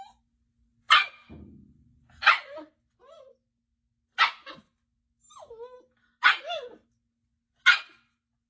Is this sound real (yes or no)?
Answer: yes